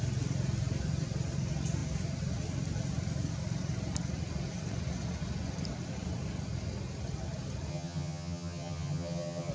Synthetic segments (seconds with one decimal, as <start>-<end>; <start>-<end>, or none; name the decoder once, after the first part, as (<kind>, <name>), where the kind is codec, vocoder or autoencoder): 7.7-9.5 (vocoder, HiFi-GAN)